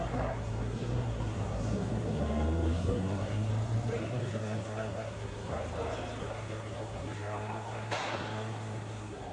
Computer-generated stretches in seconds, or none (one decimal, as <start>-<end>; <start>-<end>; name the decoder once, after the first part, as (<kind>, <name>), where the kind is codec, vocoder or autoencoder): 0.0-3.5 (codec, SNAC); 4.0-5.6; 6.2-9.3